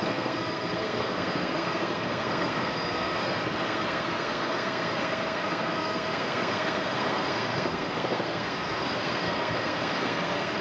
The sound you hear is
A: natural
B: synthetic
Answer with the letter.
B